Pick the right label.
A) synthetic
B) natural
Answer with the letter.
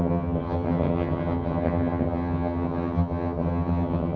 A